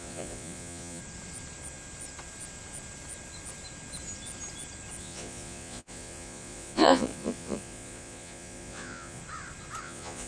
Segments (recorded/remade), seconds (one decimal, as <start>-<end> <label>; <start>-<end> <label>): 0.0-1.0 remade; 1.0-5.0 recorded; 5.0-9.2 remade; 9.2-9.8 recorded; 9.8-10.3 remade